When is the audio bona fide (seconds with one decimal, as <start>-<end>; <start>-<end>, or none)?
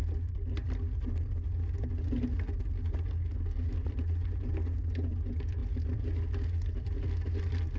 0.0-7.8